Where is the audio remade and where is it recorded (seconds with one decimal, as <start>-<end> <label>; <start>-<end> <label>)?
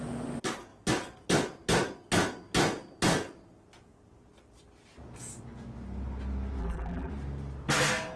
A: 0.0-6.6 recorded; 6.6-7.1 remade; 7.1-8.2 recorded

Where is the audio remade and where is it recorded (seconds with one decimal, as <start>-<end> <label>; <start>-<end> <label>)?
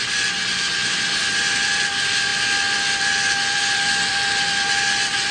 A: 0.0-5.3 remade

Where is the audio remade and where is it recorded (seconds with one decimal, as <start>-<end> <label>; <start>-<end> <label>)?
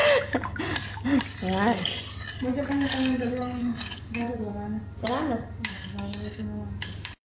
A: 0.0-2.7 recorded; 2.7-7.2 remade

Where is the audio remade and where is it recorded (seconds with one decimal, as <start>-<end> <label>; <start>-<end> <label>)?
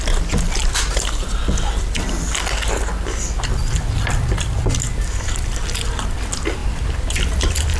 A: 0.0-0.6 recorded; 0.6-1.4 remade; 1.4-3.6 recorded; 3.6-4.6 remade; 4.6-7.8 recorded